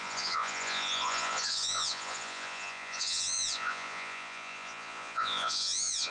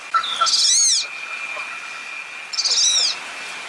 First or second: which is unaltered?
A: second